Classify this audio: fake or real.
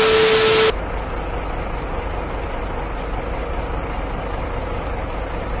real